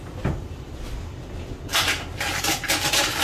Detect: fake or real fake